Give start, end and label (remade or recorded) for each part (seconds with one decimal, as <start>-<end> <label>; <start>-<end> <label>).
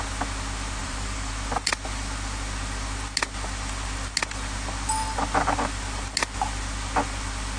0.0-0.8 recorded; 0.8-1.3 remade; 1.3-7.6 recorded